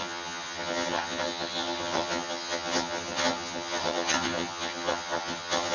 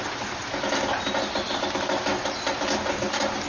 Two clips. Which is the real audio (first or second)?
second